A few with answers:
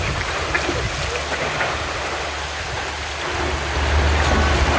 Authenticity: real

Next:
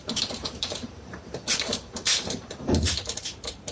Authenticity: fake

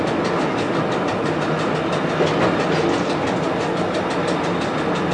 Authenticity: real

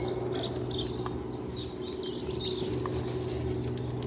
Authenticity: real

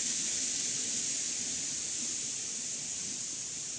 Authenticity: real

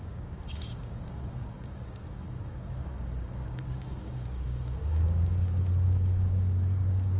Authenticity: fake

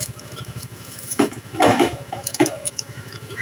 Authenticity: fake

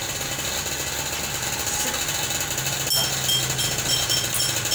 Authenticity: real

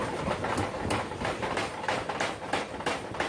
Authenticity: real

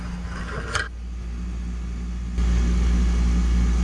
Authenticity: real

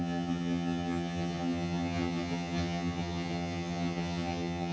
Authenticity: fake